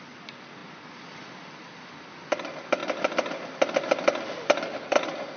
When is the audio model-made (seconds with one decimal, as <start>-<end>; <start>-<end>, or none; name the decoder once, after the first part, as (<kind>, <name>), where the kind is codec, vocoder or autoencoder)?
0.0-0.6 (vocoder, BigVGAN v2); 1.3-2.8; 4.2-5.4

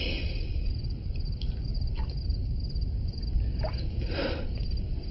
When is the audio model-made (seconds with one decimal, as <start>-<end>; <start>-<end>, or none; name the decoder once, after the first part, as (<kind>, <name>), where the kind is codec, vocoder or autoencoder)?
0.0-1.7 (vocoder, BigVGAN v2); 3.0-5.1

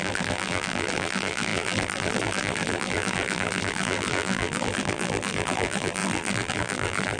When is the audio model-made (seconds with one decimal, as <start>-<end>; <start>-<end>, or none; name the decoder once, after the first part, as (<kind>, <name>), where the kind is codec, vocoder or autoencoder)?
0.0-7.2 (vocoder, BigVGAN v2)

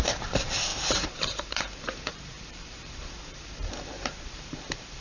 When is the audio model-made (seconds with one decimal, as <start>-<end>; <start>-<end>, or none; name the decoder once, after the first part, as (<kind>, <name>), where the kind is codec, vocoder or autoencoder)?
0.0-5.0 (vocoder, BigVGAN v2)

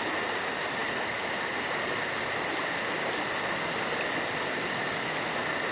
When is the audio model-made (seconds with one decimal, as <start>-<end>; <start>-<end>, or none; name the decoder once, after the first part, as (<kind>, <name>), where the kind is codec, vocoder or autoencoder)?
none

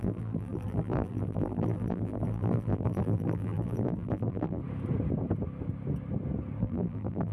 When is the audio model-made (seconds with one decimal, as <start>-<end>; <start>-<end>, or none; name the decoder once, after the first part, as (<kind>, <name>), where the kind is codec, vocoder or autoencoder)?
0.0-4.6 (vocoder, BigVGAN v2); 6.6-7.3